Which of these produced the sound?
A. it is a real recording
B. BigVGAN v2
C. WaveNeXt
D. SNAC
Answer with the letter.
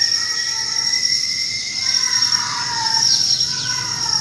B